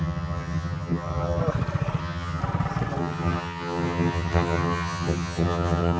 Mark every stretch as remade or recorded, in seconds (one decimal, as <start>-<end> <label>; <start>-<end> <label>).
0.0-1.4 remade; 1.4-2.0 recorded; 2.0-2.4 remade; 2.4-3.0 recorded; 3.0-6.0 remade